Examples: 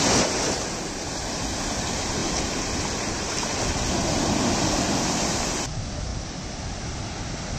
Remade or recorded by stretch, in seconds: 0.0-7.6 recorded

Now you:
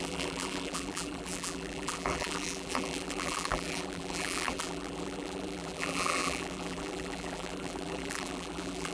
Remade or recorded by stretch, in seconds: 0.0-8.9 remade

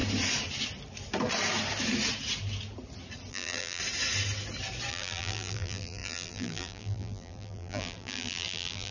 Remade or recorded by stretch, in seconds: 0.0-3.3 recorded; 3.3-3.8 remade; 3.8-4.9 recorded; 4.9-8.9 remade

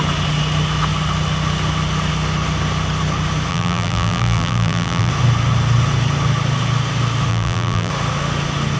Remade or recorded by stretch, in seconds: 0.0-3.5 recorded; 3.5-5.1 remade; 5.1-7.3 recorded; 7.3-7.9 remade; 7.9-8.8 recorded

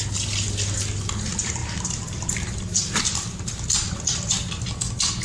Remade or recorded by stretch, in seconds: 0.0-1.6 recorded; 1.6-4.7 remade; 4.7-5.2 recorded

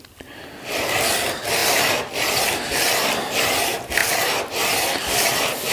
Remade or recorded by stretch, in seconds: 0.0-1.6 recorded; 1.6-2.3 remade; 2.3-5.7 recorded

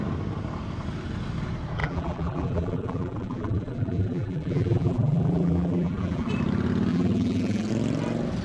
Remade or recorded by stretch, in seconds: 0.0-1.8 recorded; 1.8-6.3 remade; 6.3-6.9 recorded; 6.9-7.7 remade; 7.7-8.4 recorded

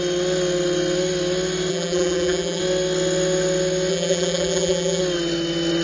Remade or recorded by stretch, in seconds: 0.0-1.7 recorded; 1.7-2.6 remade; 2.6-3.9 recorded; 3.9-5.0 remade; 5.0-5.8 recorded